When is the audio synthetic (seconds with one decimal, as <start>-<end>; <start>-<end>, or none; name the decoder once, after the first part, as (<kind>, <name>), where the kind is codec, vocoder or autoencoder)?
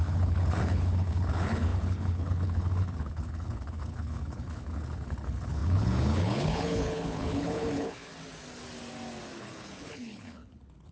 0.0-8.1 (codec, HILCodec); 9.4-10.9